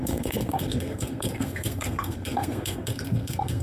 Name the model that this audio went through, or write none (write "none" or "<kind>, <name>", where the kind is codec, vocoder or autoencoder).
codec, SNAC